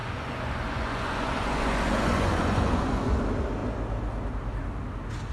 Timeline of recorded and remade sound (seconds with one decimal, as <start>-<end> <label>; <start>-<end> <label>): 0.0-3.2 remade; 3.2-5.3 recorded